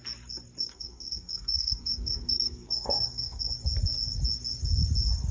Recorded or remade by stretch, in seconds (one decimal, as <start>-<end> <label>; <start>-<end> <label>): 0.0-0.6 recorded; 0.6-3.5 remade; 3.5-5.3 recorded